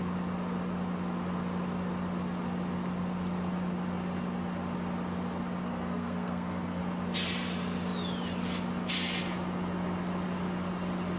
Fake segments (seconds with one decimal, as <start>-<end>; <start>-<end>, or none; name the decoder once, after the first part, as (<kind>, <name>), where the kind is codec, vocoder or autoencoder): 5.7-6.8 (codec, SNAC)